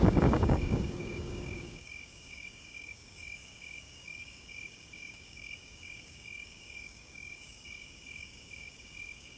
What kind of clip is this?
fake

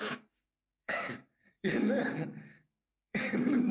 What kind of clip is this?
fake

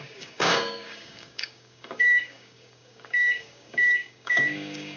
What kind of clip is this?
fake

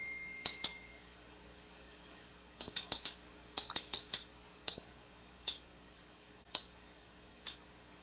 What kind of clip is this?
fake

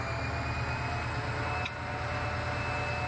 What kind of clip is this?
real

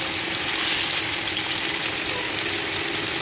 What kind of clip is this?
real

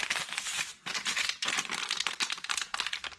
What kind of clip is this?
real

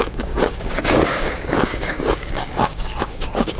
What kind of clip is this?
fake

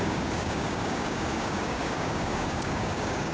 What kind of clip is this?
fake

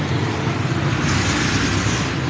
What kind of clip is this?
real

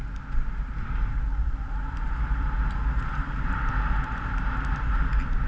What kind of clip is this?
real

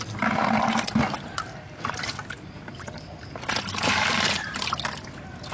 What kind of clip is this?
real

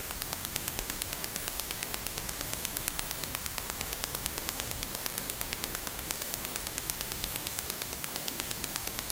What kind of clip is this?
fake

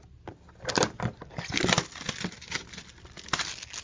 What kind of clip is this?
real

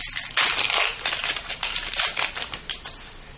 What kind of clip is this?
real